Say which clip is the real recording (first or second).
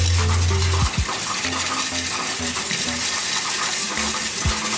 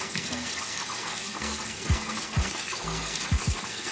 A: first